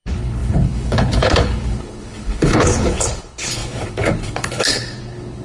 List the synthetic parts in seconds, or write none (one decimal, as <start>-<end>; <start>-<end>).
0.0-5.4